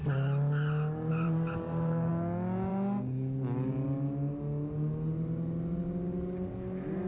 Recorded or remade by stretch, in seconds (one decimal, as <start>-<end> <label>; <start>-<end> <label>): 0.0-1.1 recorded; 1.1-2.1 remade; 2.1-7.1 recorded